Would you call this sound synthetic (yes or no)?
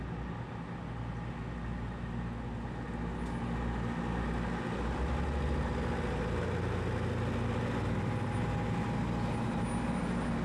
no